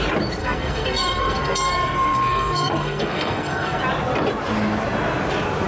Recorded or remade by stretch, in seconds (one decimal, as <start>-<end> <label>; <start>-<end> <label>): 0.0-0.4 recorded; 0.4-3.8 remade; 3.8-5.7 recorded